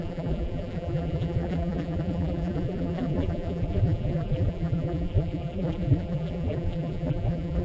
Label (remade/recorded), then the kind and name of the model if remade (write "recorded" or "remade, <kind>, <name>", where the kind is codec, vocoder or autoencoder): remade, vocoder, BigVGAN v2